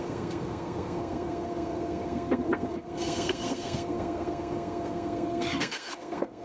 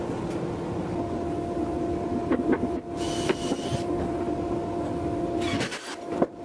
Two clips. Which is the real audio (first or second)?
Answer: second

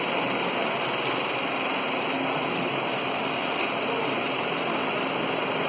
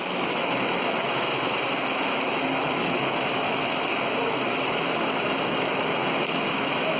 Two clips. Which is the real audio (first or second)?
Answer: first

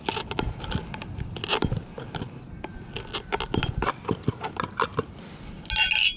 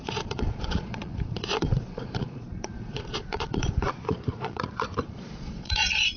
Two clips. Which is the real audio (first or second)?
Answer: first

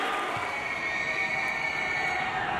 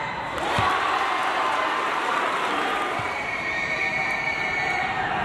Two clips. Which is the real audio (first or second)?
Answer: first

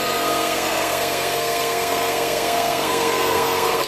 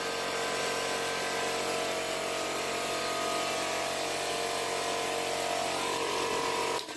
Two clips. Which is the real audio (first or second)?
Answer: second